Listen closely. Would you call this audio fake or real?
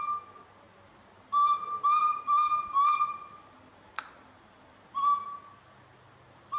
real